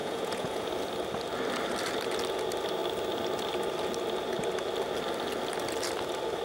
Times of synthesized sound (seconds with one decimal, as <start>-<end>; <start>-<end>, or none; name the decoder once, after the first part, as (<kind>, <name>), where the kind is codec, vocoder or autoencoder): 0.0-0.7 (vocoder, Vocos)